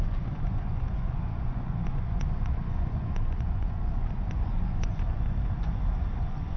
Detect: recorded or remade remade